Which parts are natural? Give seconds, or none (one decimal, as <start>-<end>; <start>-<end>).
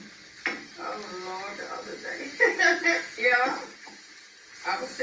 0.0-1.9